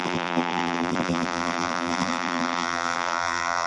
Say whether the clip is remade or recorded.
remade